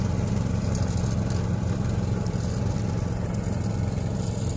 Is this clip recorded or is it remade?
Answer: recorded